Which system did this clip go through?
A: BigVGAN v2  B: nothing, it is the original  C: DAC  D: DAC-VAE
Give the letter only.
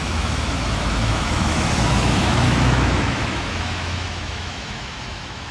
D